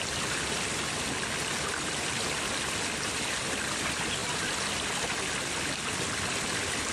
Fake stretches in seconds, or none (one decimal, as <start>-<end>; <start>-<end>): none

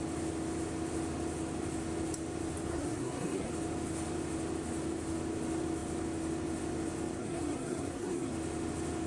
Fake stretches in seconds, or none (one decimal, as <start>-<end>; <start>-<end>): 2.7-3.5; 7.2-8.3

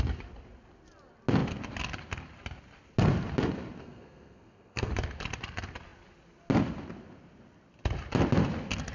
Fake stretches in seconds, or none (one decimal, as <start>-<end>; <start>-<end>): 3.8-4.9

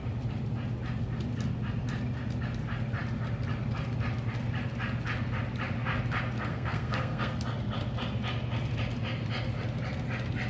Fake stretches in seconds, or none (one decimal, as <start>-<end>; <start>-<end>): 6.5-7.3

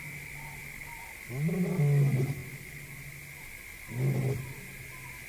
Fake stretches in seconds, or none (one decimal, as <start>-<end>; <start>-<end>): none